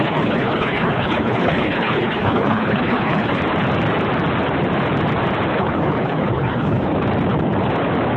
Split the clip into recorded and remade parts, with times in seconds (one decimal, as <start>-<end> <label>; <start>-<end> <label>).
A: 0.0-3.4 remade; 3.4-5.6 recorded; 5.6-6.9 remade; 6.9-8.2 recorded